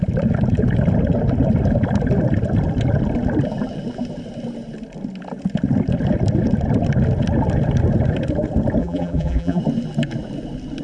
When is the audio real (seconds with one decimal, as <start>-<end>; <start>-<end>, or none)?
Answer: 0.0-8.8; 9.6-10.8